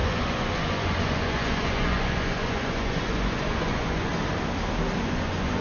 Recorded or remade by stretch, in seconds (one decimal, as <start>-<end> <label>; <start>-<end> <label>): 0.0-4.1 remade; 4.1-5.0 recorded; 5.0-5.6 remade